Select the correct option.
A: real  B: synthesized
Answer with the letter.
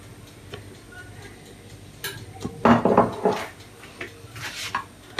A